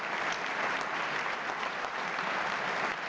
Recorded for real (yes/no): yes